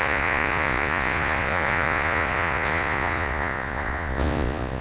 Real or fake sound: fake